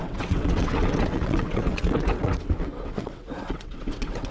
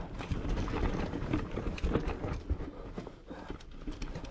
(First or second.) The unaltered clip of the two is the second